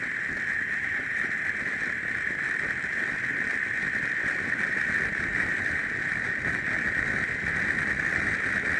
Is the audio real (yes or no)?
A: yes